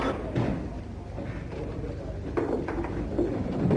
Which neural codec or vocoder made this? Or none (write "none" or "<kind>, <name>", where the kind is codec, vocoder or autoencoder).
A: none